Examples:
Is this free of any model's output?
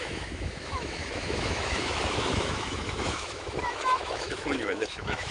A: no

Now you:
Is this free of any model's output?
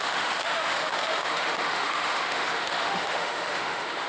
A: no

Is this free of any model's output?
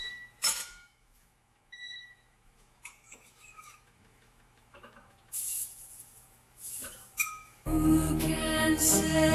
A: no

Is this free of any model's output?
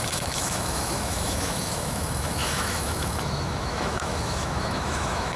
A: no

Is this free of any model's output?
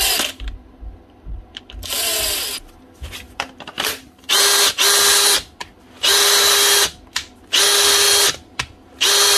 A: yes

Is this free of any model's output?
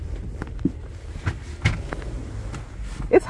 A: yes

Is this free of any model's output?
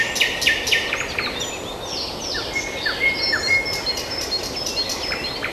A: yes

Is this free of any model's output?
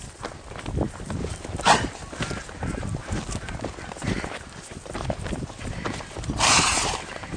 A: yes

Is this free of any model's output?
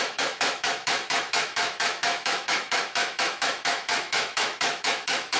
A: no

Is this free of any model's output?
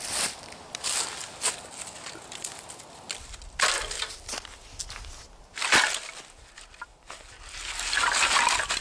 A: yes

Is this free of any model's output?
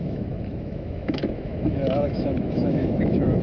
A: no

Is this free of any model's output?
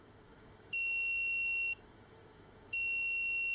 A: no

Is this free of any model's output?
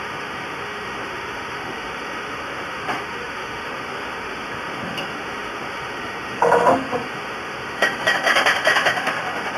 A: no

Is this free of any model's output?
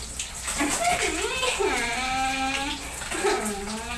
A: yes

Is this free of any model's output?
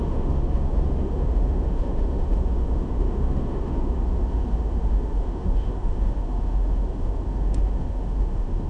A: no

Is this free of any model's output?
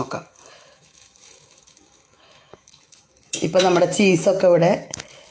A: no